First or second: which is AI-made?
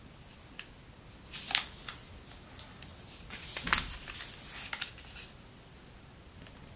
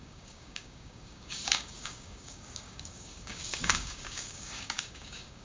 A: second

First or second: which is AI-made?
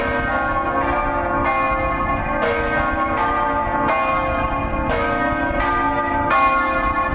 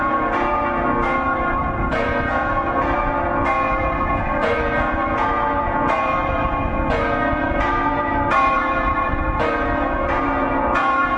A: second